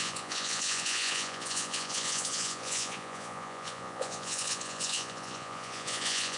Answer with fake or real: fake